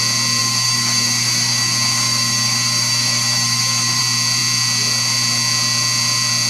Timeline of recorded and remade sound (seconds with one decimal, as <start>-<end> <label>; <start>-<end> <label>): 0.0-0.4 recorded; 0.4-4.0 remade; 4.0-6.5 recorded